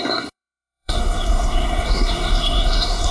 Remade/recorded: remade